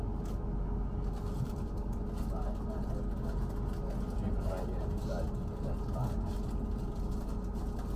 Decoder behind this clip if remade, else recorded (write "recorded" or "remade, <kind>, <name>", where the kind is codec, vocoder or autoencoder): recorded